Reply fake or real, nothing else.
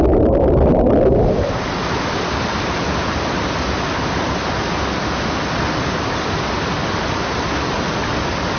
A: real